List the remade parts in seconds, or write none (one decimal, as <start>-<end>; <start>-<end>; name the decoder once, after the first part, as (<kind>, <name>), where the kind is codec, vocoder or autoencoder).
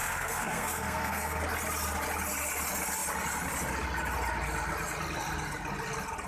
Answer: 0.0-1.4 (codec, SNAC)